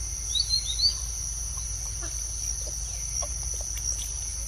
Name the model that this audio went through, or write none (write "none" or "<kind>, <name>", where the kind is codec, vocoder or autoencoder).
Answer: none